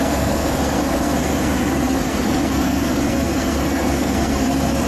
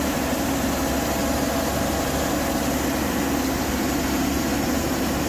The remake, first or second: first